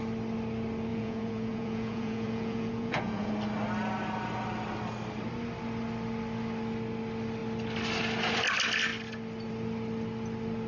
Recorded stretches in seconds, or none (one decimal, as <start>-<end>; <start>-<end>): 0.0-0.9; 3.3-10.7